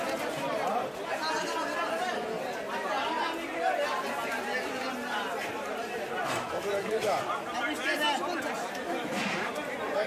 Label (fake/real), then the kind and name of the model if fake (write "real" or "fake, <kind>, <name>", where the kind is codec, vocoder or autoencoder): real